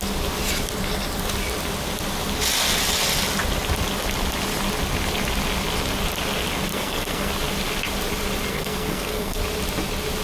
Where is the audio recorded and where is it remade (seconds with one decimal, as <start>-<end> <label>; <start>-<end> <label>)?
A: 0.0-6.7 recorded; 6.7-7.3 remade; 7.3-8.5 recorded; 8.5-9.4 remade; 9.4-10.2 recorded